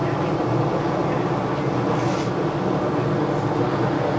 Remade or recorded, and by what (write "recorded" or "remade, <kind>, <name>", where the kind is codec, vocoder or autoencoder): recorded